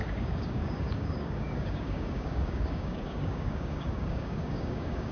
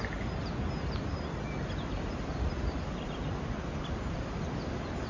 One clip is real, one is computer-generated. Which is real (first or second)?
second